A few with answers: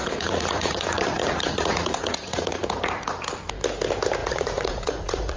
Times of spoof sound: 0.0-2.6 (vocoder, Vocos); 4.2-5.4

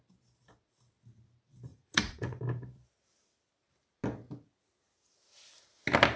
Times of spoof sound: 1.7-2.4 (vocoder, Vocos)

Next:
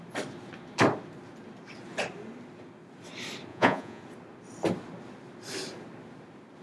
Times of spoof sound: 3.5-4.0 (vocoder, Vocos)

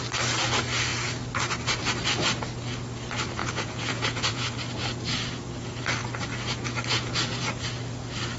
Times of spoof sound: 3.4-4.5 (vocoder, Vocos)